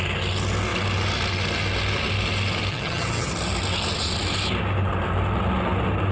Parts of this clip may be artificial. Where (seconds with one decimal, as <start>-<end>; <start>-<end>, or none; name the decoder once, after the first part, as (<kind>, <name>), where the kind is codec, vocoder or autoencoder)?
2.7-3.3 (vocoder, HiFi-GAN)